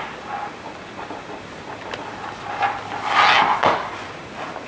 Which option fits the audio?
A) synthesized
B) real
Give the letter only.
B